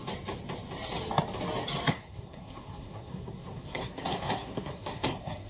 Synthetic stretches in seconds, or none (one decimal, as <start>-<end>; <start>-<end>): 1.9-5.5